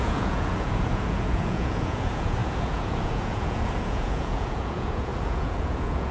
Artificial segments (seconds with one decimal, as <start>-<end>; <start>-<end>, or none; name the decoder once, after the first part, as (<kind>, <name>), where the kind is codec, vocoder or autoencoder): 0.0-6.1 (vocoder, Vocos)